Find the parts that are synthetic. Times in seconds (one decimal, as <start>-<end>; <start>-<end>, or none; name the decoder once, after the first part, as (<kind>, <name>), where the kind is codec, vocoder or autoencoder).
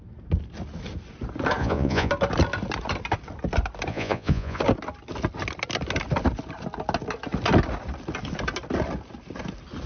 1.6-2.1 (vocoder, Vocos); 3.9-4.6